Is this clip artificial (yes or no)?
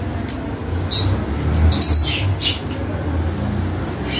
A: no